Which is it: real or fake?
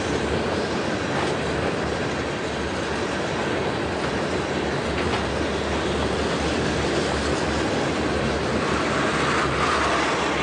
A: real